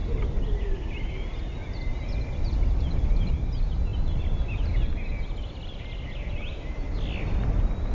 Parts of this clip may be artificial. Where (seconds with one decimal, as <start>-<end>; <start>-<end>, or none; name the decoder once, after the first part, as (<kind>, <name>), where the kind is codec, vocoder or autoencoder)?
none